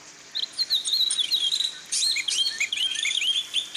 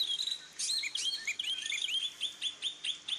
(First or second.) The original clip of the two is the second